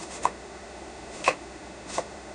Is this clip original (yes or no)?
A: no